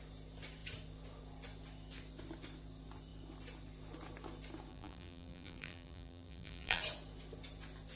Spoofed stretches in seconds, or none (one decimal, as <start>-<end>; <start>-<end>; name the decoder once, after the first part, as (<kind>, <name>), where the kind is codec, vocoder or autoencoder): 4.7-6.8 (vocoder, BigVGAN v2)